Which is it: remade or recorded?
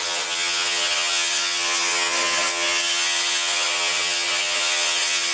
remade